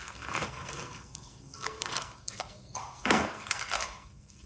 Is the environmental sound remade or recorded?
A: remade